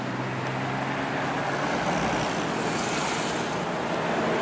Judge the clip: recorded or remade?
recorded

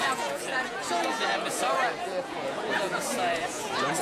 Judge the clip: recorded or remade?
remade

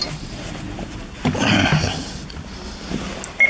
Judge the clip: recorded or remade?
recorded